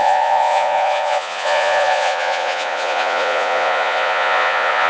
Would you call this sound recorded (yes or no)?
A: no